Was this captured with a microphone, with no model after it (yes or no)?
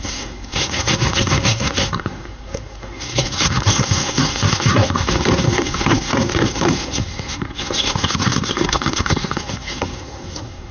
no